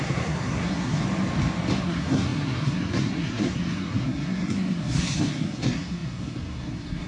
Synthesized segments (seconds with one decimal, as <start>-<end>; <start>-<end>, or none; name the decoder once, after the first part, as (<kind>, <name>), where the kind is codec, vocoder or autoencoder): 0.0-1.0 (codec, SNAC); 1.8-7.1